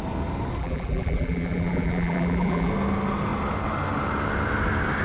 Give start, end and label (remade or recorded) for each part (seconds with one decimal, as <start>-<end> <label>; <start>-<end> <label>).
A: 0.0-0.6 recorded; 0.6-2.7 remade; 2.7-5.0 recorded